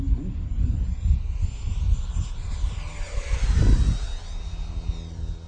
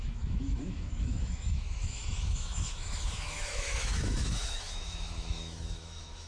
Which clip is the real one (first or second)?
first